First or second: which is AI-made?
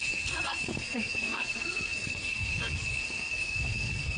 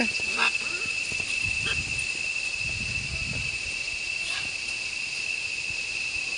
first